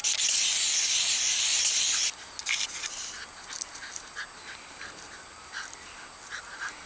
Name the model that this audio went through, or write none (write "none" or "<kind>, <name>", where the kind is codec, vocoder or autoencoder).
none